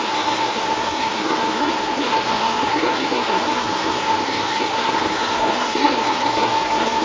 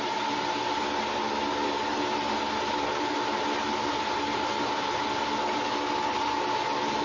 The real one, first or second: second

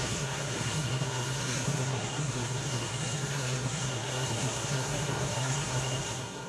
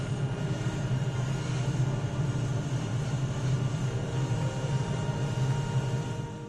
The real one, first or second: second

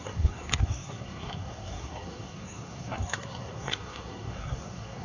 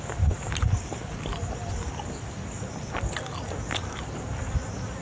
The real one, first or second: second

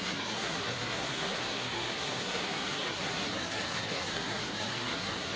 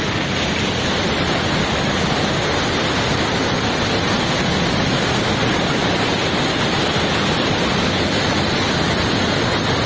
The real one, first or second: second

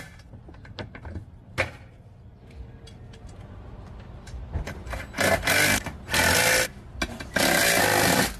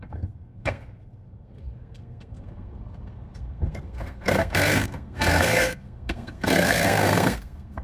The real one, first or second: first